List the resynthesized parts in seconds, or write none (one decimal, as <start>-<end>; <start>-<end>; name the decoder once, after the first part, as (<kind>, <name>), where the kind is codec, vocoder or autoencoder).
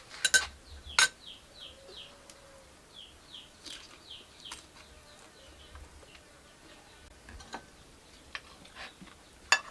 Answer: none